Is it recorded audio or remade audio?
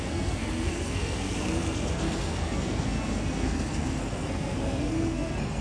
remade